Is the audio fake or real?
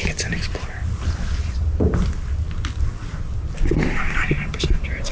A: real